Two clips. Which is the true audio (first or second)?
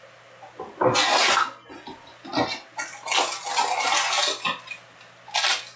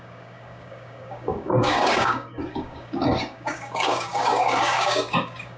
first